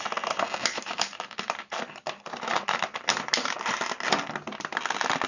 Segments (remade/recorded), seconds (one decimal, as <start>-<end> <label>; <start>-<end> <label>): 0.0-0.6 recorded; 0.6-3.8 remade; 3.8-5.3 recorded

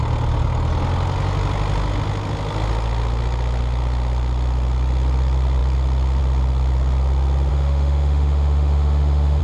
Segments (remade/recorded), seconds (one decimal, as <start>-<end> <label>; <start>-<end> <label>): 0.0-7.5 recorded; 7.5-9.4 remade